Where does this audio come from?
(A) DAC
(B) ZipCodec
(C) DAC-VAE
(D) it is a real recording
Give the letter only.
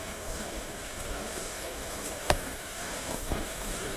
A